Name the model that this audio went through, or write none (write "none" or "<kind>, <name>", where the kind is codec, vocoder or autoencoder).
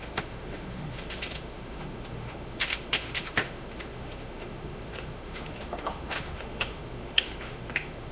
autoencoder, DAC-VAE